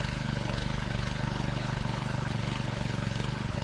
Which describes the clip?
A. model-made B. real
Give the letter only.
A